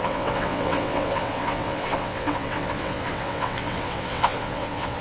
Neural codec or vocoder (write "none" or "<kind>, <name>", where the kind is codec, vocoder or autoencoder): vocoder, WaveNeXt